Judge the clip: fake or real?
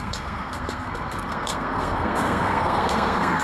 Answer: fake